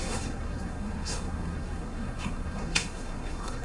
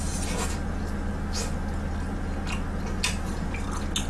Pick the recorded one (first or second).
second